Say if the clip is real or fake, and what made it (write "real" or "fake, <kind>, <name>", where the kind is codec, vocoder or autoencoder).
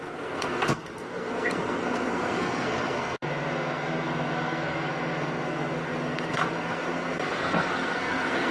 fake, codec, SNAC